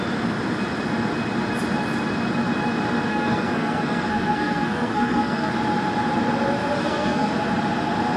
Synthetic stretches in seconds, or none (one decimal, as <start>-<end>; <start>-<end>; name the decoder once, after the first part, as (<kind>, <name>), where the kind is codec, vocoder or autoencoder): 3.1-5.5 (codec, SNAC); 6.8-7.3